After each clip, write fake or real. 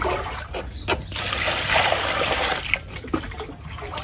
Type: real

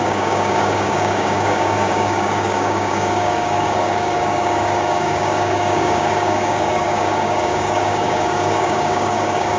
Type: fake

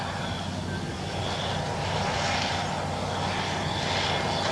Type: real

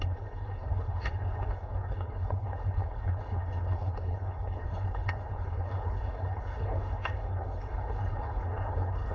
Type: fake